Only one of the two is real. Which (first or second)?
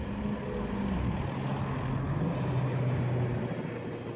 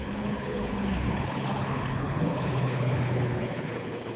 first